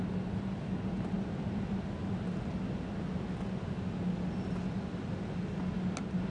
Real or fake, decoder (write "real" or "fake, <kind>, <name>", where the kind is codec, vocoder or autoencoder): real